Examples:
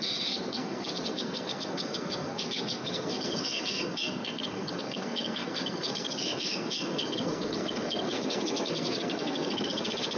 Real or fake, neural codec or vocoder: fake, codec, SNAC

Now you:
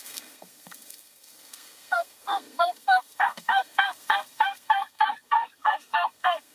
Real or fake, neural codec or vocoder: fake, codec, SNAC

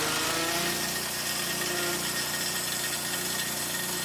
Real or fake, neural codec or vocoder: real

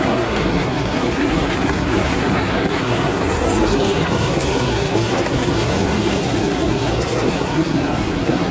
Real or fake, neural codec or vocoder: fake, codec, SNAC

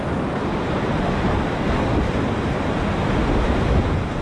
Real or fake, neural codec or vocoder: real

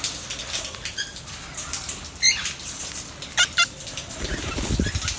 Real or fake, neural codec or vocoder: real